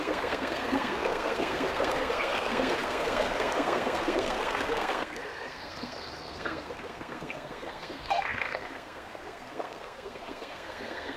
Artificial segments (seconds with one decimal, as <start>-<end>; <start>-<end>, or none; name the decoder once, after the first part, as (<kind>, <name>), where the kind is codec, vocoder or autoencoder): 0.0-11.2 (codec, SNAC)